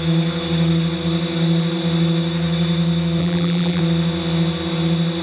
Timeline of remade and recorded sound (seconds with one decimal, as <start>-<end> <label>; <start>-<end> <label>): 0.0-3.2 recorded; 3.2-3.8 remade; 3.8-5.2 recorded